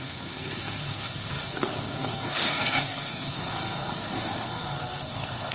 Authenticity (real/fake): fake